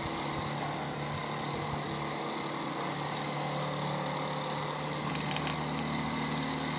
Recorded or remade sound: recorded